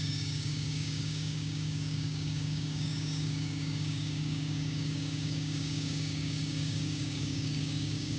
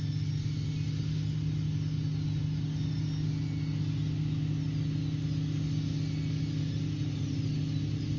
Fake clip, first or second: first